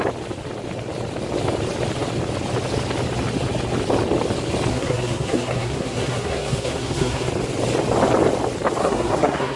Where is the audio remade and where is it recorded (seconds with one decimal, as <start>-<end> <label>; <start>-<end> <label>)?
0.0-4.7 recorded; 4.7-7.3 remade; 7.3-8.8 recorded; 8.8-9.6 remade